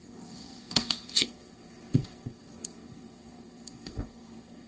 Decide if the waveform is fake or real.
fake